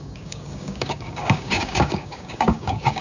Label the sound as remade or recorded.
remade